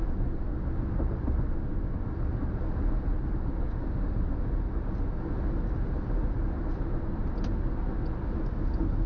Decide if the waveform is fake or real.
real